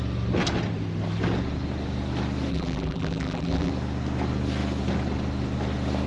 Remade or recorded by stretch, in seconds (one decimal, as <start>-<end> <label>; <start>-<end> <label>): 0.0-2.5 recorded; 2.5-3.7 remade; 3.7-6.1 recorded